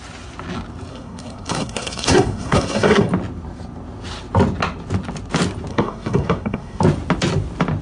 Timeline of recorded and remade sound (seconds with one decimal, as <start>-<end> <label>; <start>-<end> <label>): 0.0-0.9 recorded; 0.9-3.1 remade; 3.1-5.7 recorded; 5.7-6.8 remade; 6.8-7.8 recorded